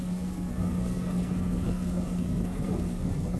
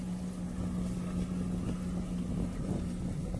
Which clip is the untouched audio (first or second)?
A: second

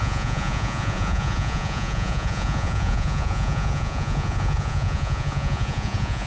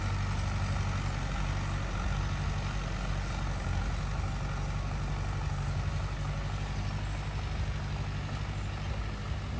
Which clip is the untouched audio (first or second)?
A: second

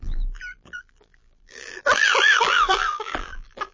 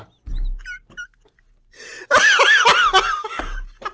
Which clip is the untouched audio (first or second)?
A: second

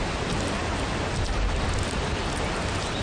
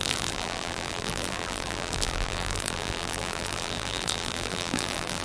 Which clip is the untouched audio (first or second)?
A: first